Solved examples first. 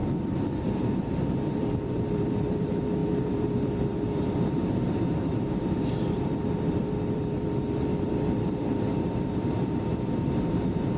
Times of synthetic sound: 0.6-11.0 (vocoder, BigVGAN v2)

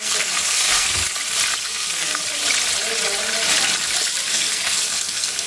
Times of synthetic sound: 0.0-1.0 (codec, SNAC); 1.6-2.2; 4.3-5.5

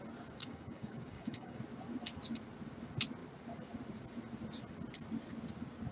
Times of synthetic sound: 0.4-1.6 (codec, DAC)

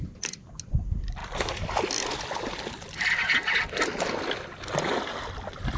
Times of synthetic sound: none

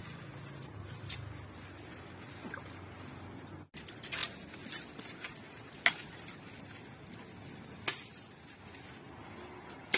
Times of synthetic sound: none